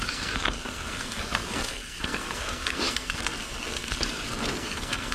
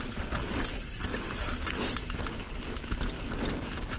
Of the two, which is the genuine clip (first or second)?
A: second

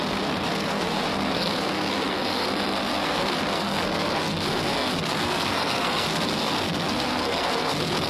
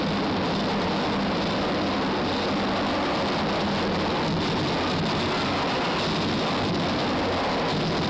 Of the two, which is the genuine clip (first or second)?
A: second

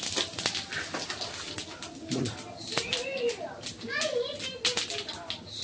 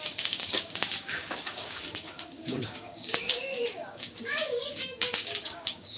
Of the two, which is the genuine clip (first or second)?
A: first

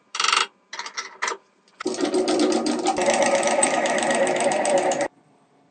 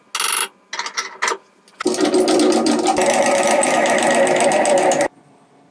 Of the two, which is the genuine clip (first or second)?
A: second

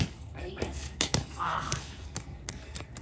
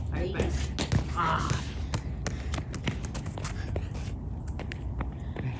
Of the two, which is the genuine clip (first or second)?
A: second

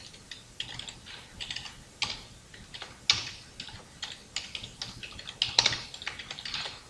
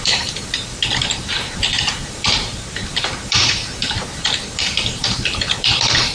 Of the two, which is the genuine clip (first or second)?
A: first